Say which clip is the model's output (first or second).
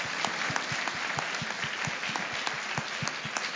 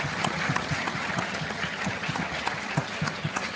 second